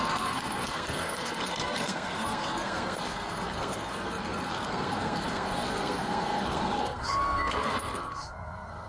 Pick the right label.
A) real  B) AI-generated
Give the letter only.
B